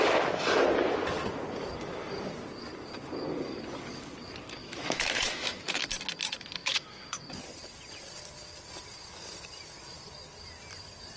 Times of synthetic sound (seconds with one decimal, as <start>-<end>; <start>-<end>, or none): 4.6-5.9; 6.6-7.2